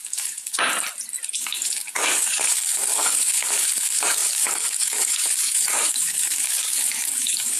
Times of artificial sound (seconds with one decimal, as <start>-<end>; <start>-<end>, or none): 0.0-0.7; 1.3-7.6